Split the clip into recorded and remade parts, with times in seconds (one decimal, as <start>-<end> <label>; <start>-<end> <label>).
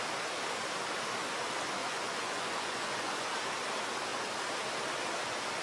0.0-1.8 recorded; 1.8-3.3 remade; 3.3-5.6 recorded